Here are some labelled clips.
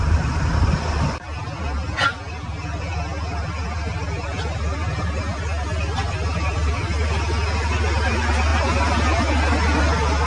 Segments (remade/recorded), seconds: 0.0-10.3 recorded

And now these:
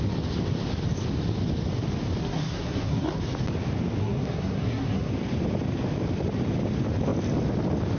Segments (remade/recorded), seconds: 0.0-2.2 recorded; 2.2-3.2 remade; 3.2-4.0 recorded; 4.0-5.1 remade; 5.1-8.0 recorded

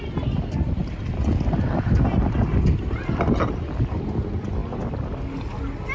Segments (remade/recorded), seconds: 0.0-5.9 recorded

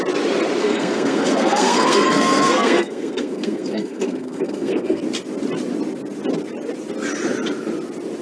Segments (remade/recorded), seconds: 0.0-0.6 recorded; 0.6-5.0 remade; 5.0-8.2 recorded

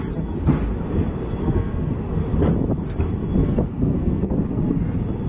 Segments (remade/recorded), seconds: 0.0-1.4 recorded; 1.4-1.9 remade; 1.9-3.4 recorded; 3.4-4.8 remade; 4.8-5.3 recorded

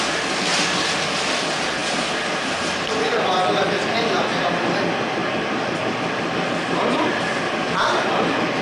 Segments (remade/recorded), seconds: 0.0-8.6 recorded